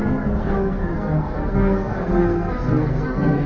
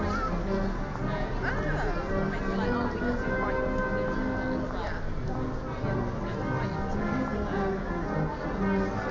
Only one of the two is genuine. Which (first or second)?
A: second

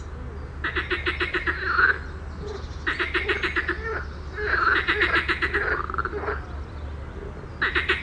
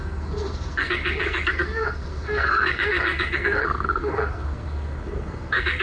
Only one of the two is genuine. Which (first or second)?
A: first